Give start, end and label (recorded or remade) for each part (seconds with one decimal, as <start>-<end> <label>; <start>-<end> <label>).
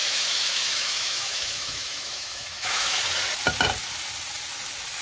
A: 0.0-3.0 remade; 3.0-5.0 recorded